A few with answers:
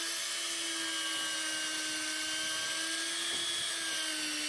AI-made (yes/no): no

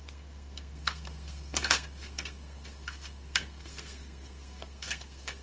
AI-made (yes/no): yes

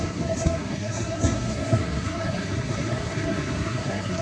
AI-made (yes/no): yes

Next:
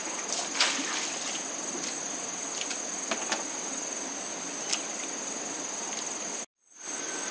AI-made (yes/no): no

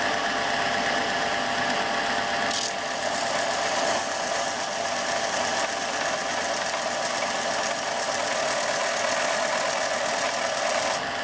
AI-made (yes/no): no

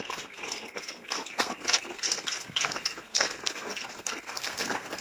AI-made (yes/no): yes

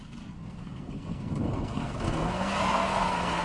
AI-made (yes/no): yes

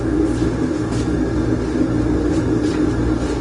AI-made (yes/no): no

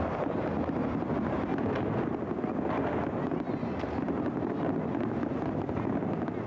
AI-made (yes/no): no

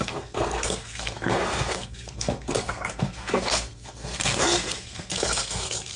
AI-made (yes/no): yes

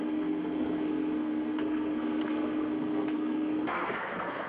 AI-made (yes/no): yes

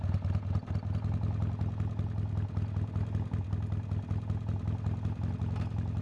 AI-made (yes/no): no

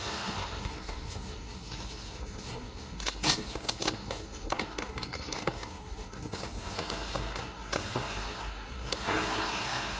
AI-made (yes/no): yes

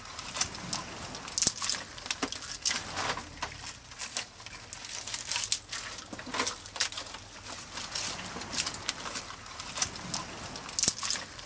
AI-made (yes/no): no